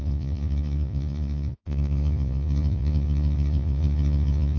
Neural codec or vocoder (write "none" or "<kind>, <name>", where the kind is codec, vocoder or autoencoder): vocoder, Vocos